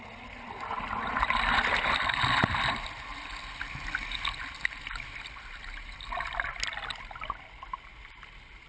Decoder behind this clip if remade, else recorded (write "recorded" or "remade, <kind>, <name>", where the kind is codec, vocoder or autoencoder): recorded